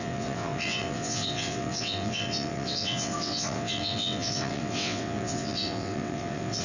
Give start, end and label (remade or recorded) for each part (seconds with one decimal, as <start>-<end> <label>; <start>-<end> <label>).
0.0-6.6 remade